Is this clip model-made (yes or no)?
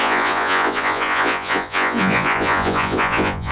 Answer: yes